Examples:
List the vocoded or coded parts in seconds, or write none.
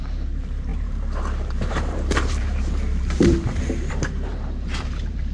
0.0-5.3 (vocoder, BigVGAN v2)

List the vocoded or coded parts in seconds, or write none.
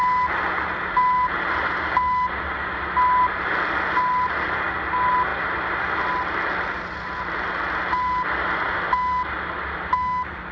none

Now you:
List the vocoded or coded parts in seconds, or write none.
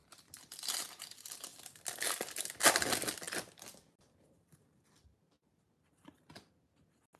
none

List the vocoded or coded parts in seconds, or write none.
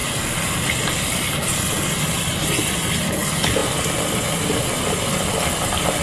none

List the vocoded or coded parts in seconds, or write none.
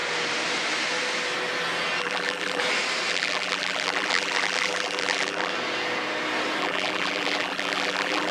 2.0-2.6 (vocoder, BigVGAN v2); 3.1-5.5; 6.6-8.3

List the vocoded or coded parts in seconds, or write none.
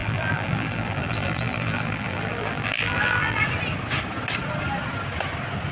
0.0-3.4 (vocoder, BigVGAN v2)